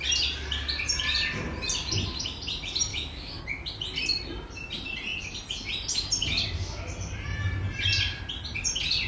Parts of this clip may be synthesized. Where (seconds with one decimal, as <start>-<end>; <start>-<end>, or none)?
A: 2.9-3.4